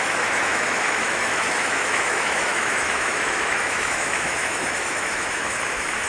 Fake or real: fake